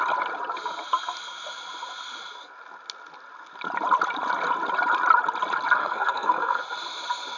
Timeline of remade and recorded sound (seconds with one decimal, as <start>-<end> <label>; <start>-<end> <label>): 0.0-5.8 recorded; 5.8-6.6 remade; 6.6-7.4 recorded